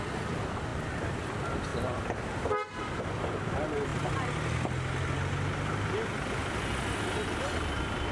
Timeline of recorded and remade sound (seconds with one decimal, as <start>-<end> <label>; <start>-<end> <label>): 0.0-8.1 recorded